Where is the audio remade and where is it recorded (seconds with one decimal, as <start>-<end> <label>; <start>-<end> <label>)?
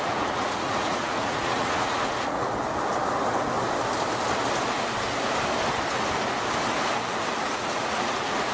0.0-2.5 remade; 2.5-7.4 recorded; 7.4-8.5 remade